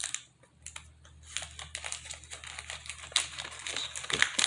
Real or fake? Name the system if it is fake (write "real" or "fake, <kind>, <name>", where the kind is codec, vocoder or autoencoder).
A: real